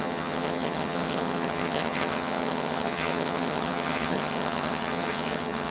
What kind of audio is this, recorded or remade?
remade